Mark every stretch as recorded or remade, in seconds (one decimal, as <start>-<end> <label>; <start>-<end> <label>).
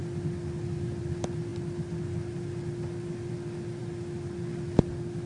0.0-5.3 recorded